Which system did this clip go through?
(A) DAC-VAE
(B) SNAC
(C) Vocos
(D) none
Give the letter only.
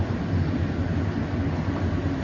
D